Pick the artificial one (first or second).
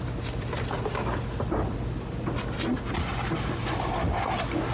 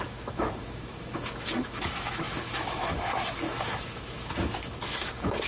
second